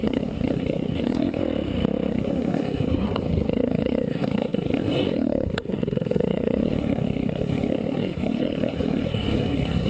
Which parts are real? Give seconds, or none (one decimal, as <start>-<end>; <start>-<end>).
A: 1.4-2.1